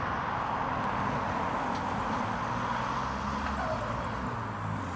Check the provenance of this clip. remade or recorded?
recorded